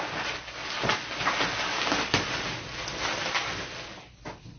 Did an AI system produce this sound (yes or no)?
no